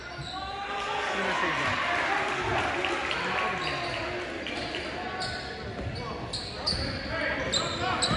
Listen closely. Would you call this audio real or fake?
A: real